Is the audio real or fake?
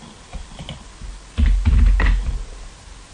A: real